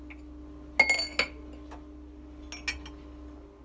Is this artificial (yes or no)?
no